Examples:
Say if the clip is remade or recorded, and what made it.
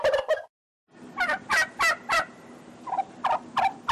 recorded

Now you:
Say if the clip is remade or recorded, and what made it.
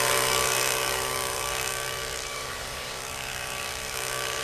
remade, codec, DAC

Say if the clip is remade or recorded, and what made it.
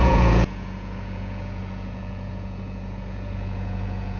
remade, vocoder, Vocos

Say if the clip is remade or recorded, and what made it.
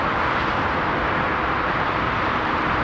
recorded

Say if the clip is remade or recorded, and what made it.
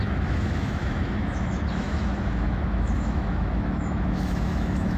remade, autoencoder, DAC-VAE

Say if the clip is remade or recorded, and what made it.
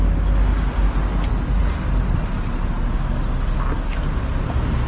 recorded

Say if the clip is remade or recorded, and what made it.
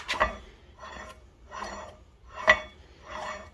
recorded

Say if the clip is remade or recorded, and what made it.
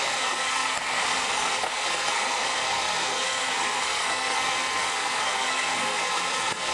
remade, codec, SNAC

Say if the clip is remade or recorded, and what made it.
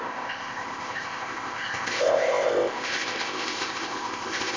remade, codec, ZipCodec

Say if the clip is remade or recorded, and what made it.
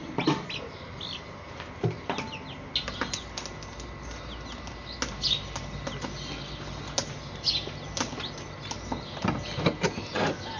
recorded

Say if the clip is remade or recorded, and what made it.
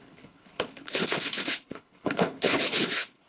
remade, codec, HILCodec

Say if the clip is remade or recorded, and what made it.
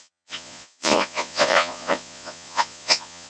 remade, vocoder, Vocos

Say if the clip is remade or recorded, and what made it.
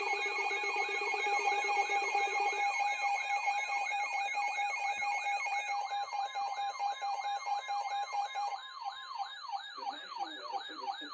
remade, vocoder, BigVGAN v2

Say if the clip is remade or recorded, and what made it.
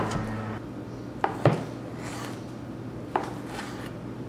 recorded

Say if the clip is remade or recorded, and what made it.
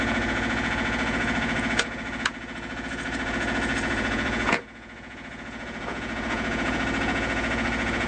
remade, vocoder, Vocos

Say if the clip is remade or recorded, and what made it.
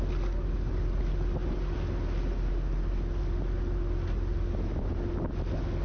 recorded